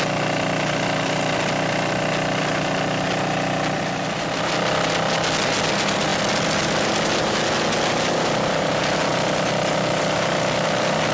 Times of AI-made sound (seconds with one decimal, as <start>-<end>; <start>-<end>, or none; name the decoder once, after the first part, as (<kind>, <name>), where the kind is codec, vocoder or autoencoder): none